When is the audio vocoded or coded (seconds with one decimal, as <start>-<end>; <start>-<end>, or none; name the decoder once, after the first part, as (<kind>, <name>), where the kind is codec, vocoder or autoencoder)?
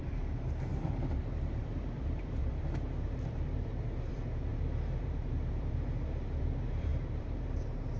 0.0-8.0 (vocoder, BigVGAN v2)